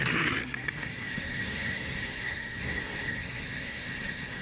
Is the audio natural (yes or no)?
no